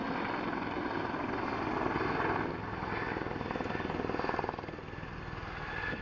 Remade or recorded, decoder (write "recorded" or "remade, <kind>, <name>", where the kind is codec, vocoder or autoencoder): recorded